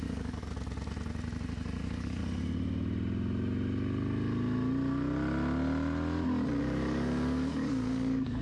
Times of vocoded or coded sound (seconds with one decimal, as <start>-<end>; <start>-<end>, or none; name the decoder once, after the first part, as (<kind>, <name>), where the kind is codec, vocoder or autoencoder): 0.0-0.5 (codec, DAC); 1.8-2.2; 6.6-8.4